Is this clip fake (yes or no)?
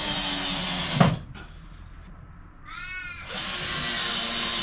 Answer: no